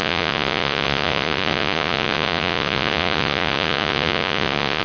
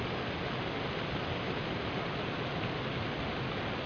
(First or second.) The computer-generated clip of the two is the first